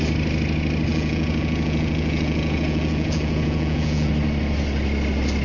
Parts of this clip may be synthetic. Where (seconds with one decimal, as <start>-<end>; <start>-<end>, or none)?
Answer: 0.9-4.1